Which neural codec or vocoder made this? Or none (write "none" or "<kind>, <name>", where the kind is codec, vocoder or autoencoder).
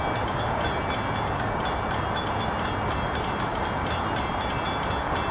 none